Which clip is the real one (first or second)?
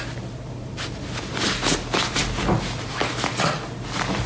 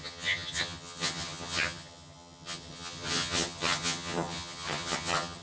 first